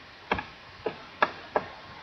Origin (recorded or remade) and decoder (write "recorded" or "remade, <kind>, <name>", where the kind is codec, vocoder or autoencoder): recorded